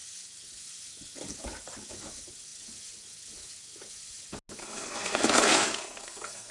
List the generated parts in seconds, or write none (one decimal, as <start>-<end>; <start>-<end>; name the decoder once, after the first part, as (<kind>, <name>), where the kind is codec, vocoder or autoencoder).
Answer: 4.6-6.5 (codec, SNAC)